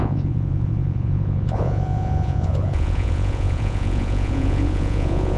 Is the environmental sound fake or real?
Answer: fake